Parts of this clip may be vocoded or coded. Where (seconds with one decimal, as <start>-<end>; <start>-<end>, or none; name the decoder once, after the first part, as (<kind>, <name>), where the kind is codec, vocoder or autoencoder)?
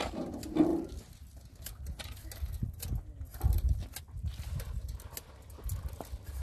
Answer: none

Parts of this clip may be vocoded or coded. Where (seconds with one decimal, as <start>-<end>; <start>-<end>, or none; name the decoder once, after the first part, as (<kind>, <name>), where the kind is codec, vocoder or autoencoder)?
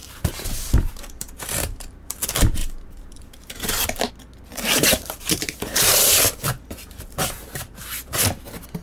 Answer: 0.0-2.2 (vocoder, BigVGAN v2); 2.6-4.1; 4.5-8.2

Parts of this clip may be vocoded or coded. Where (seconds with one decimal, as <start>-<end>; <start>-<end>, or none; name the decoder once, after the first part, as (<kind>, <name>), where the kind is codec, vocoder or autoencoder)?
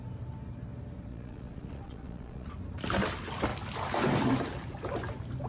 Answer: 1.1-2.5 (vocoder, Vocos)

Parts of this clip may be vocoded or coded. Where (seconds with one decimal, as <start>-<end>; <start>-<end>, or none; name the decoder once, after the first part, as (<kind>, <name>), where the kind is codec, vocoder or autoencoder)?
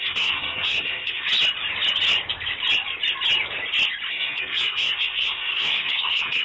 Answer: 0.0-1.3 (codec, SNAC); 4.1-6.4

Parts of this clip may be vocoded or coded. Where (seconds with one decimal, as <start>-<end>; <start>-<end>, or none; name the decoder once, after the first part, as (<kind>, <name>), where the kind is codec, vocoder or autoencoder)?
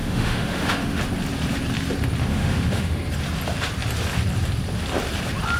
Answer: 0.0-1.0 (autoencoder, DAC-VAE); 2.3-3.0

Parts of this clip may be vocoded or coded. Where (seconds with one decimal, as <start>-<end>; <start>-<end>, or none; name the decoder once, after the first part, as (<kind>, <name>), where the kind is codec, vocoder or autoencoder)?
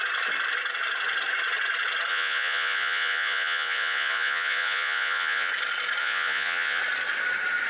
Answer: 2.1-5.5 (vocoder, Vocos); 6.0-6.8